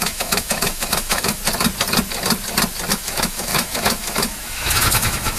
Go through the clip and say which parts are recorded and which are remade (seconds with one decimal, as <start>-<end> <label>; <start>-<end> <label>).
0.0-1.4 remade; 1.4-2.9 recorded; 2.9-5.4 remade